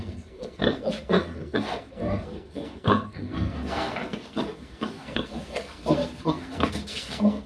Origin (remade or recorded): remade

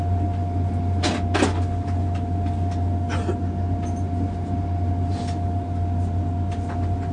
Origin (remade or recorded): recorded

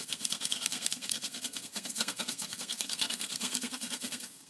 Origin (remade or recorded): remade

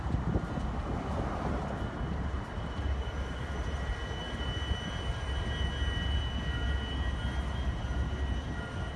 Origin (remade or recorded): recorded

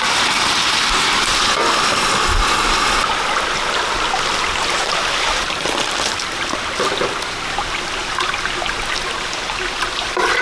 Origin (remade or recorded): recorded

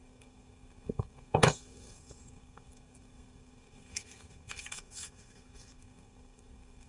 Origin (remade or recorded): remade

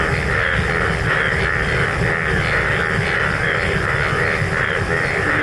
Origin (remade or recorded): recorded